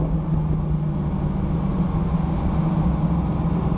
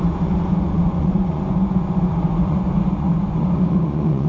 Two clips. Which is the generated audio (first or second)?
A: second